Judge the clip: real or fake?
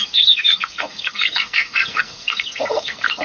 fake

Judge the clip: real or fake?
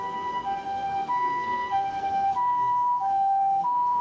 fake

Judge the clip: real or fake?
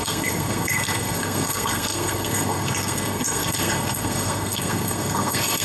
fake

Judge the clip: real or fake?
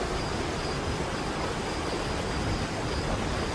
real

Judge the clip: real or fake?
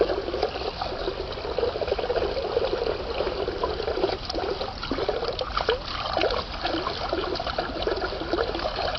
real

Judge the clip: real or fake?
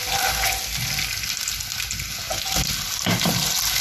real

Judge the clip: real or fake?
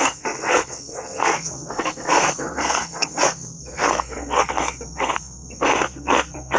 fake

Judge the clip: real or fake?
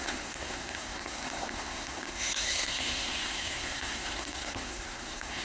fake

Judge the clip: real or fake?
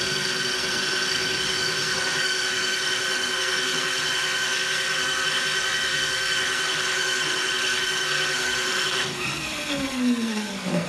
fake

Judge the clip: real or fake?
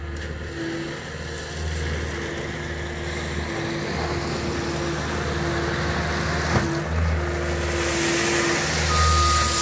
real